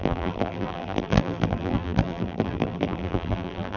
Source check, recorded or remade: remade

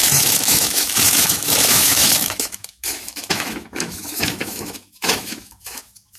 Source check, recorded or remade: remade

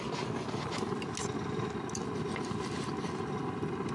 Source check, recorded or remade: recorded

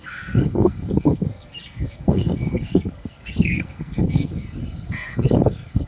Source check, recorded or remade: remade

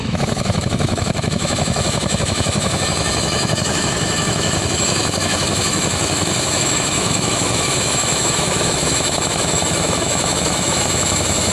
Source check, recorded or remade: remade